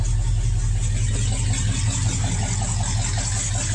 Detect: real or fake real